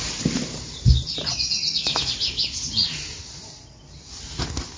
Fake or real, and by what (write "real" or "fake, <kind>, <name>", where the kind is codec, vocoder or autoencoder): real